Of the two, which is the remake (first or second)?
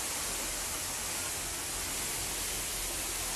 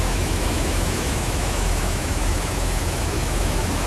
second